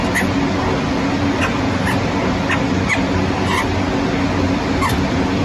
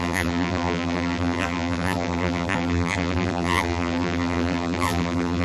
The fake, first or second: second